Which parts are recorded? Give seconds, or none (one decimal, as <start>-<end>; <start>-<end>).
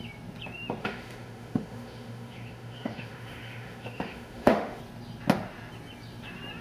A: 0.0-0.8; 4.8-6.6